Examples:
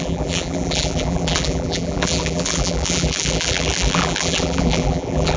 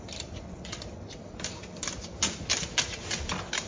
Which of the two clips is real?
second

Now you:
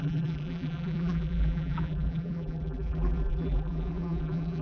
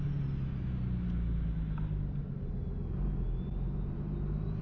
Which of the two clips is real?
second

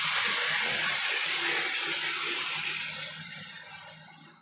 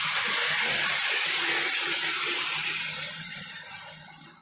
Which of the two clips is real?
first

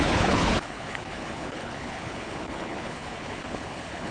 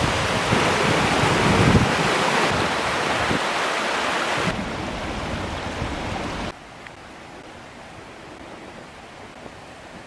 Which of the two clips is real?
second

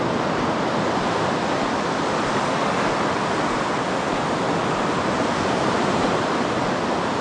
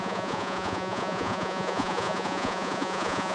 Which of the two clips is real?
first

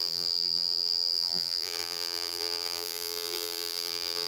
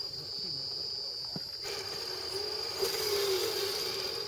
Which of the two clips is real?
second